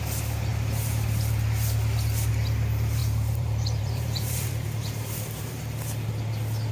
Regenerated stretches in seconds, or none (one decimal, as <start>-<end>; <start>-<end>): 3.0-5.9